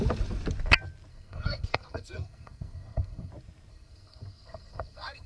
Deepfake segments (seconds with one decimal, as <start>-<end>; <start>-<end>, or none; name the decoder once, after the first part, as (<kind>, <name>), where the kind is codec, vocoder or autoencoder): 1.1-3.3 (codec, SNAC); 3.7-5.3